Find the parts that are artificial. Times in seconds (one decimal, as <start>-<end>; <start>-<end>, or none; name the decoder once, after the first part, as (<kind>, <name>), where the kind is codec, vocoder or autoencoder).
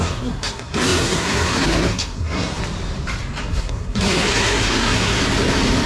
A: 0.0-2.6 (codec, SNAC); 3.4-5.2